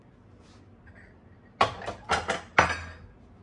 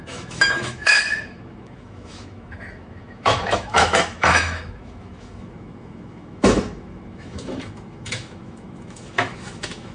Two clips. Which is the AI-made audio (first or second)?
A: second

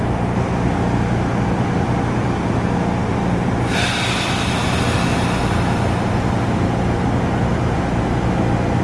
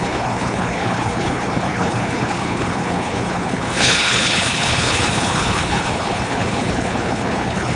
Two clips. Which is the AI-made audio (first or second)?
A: second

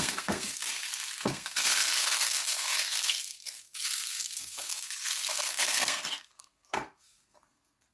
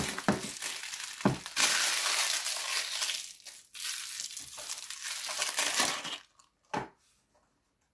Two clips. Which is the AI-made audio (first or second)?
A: first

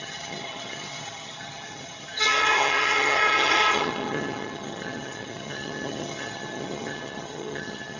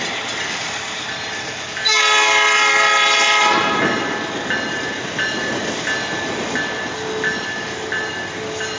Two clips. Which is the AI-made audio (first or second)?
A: first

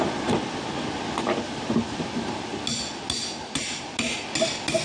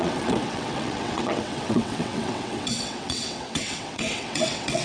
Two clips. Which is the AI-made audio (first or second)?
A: second